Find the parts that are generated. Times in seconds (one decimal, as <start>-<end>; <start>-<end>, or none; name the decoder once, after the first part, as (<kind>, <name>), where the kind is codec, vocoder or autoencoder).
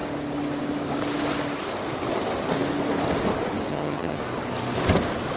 3.7-4.2 (vocoder, HiFi-GAN)